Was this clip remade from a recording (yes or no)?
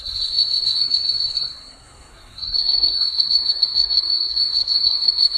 yes